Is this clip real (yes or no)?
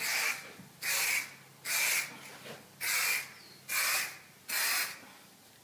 yes